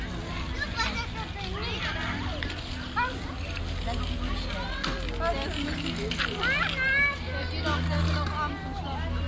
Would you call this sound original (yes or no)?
yes